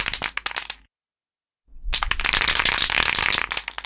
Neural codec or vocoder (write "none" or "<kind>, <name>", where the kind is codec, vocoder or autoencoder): none